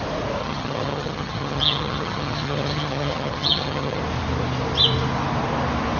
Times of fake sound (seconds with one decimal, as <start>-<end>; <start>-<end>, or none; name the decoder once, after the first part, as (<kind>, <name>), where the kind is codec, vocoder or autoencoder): 0.4-4.0 (vocoder, HiFi-GAN)